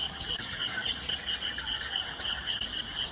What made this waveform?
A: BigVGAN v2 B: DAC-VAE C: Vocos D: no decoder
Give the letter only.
D